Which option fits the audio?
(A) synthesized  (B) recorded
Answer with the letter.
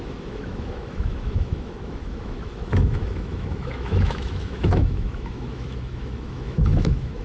A